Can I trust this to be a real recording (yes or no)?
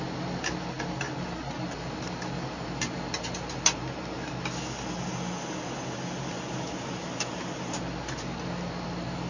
yes